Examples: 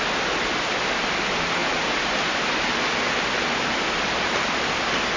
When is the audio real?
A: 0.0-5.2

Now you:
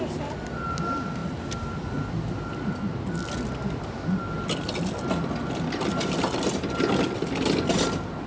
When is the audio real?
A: 0.0-8.3

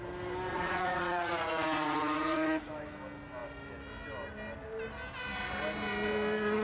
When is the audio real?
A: 0.0-0.5; 2.6-6.6

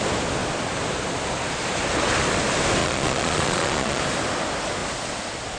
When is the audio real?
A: 0.0-2.8; 4.0-5.6